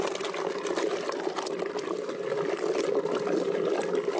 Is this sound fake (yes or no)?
no